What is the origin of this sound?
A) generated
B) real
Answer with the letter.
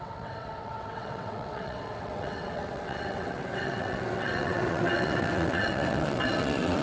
A